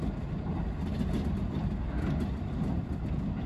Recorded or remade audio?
recorded